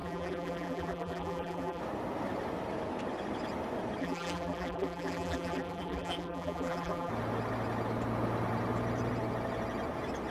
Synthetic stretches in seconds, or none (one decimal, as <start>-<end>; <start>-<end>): 0.0-1.8; 4.0-7.1